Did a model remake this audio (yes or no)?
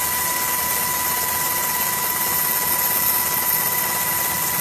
no